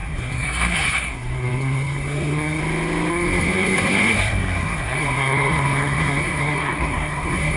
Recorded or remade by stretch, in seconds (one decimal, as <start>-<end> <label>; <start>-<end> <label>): 0.0-2.6 remade; 2.6-3.1 recorded; 3.1-7.6 remade